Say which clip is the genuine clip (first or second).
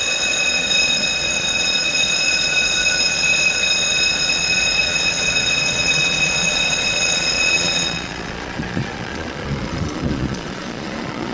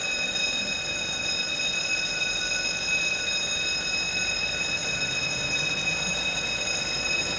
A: second